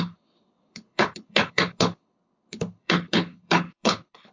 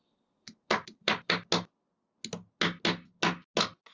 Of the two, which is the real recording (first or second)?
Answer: second